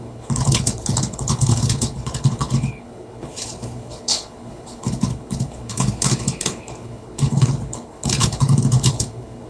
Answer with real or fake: fake